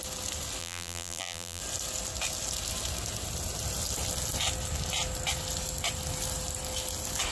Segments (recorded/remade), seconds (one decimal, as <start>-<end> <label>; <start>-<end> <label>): 0.0-0.6 recorded; 0.6-1.6 remade; 1.6-7.3 recorded